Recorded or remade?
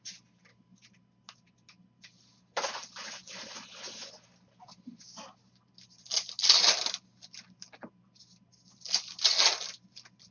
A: recorded